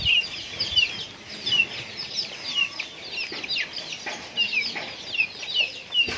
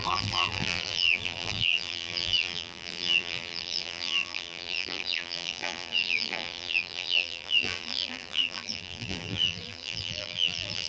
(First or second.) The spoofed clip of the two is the second